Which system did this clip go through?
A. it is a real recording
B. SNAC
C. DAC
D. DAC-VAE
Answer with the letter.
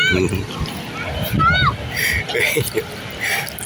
A